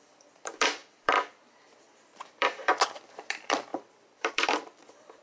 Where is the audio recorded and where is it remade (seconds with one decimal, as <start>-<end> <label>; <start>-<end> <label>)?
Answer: 0.0-5.2 remade